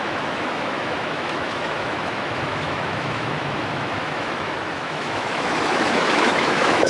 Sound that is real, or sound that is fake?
fake